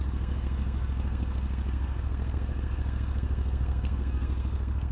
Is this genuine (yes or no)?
no